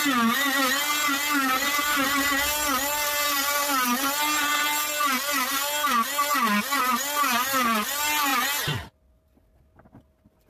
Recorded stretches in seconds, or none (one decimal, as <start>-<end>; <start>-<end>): 0.0-10.5